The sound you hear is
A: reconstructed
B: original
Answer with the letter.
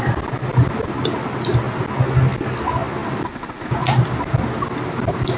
B